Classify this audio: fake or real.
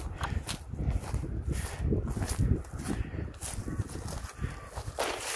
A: real